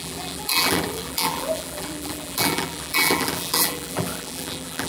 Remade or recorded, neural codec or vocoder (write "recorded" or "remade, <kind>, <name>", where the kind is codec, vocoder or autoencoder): remade, vocoder, BigVGAN v2